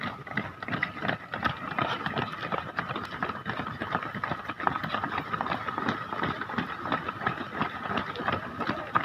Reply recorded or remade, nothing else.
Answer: recorded